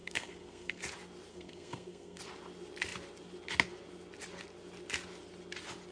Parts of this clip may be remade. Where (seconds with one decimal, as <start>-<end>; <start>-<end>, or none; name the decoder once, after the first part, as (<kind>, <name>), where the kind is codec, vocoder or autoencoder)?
0.0-0.8 (codec, SNAC); 1.3-2.2

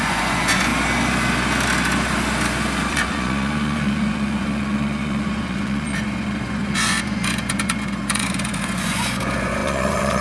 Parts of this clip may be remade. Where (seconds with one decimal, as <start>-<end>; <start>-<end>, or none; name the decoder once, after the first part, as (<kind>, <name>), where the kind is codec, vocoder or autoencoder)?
0.0-0.7 (vocoder, Vocos); 2.9-10.2